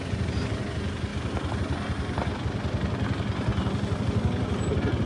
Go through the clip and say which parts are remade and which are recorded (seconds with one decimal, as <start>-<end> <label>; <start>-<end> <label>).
0.0-1.1 remade; 1.1-1.6 recorded; 1.6-3.5 remade; 3.5-4.0 recorded; 4.0-5.1 remade